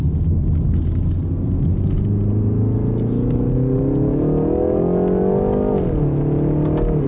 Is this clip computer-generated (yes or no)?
no